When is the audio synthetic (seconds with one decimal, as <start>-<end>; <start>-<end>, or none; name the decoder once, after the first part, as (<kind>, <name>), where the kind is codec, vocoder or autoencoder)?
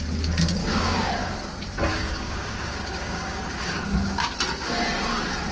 0.6-1.1 (codec, DAC); 1.9-4.3